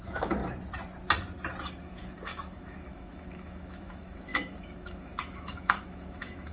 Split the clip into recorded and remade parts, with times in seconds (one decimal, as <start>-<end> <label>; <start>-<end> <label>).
0.0-0.4 remade; 0.4-1.8 recorded; 1.8-6.5 remade